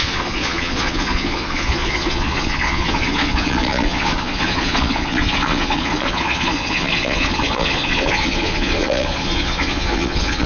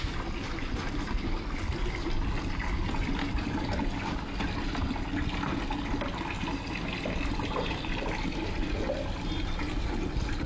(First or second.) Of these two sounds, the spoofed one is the first